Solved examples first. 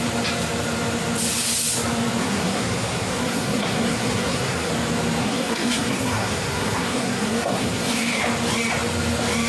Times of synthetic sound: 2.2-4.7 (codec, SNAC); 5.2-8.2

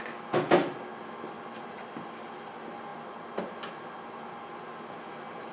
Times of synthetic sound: none

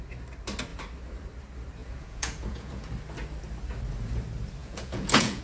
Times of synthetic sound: 1.8-2.9 (vocoder, Vocos); 4.6-5.4

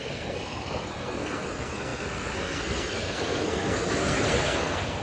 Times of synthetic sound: 0.0-5.0 (codec, SNAC)

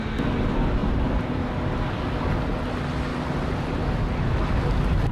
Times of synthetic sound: 0.8-1.4 (vocoder, BigVGAN v2); 3.1-3.8